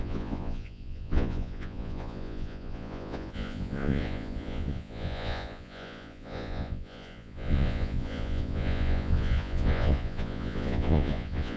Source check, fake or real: fake